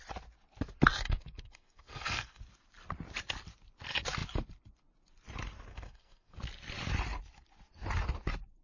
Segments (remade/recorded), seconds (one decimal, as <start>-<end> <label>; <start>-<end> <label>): 0.0-0.9 recorded; 0.9-2.4 remade; 2.4-5.7 recorded; 5.7-6.4 remade; 6.4-8.6 recorded